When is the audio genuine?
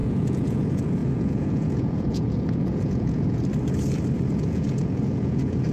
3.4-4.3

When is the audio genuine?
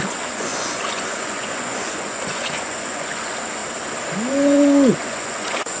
3.6-4.3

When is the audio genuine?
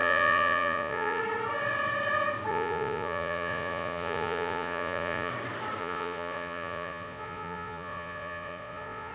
1.2-2.5; 5.3-5.8